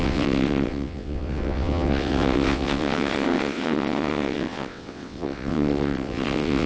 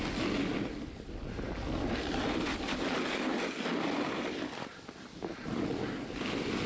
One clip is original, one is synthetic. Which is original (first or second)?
second